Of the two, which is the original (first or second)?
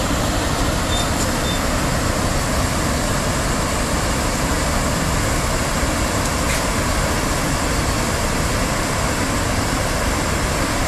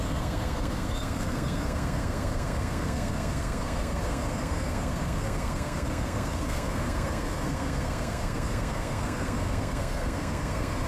first